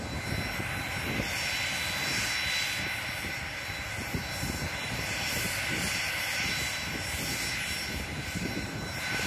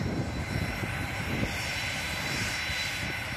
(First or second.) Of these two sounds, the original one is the first